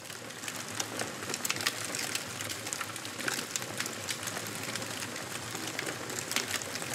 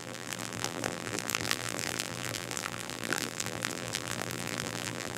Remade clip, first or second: second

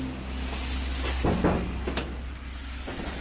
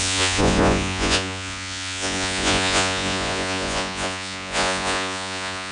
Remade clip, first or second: second